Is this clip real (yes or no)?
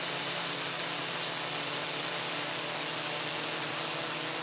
yes